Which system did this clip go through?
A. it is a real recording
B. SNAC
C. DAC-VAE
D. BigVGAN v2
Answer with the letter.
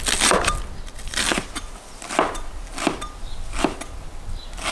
A